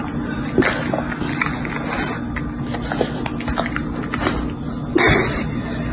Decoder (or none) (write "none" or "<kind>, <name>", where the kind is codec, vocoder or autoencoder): none